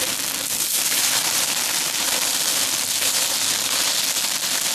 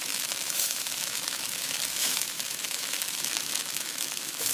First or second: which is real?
first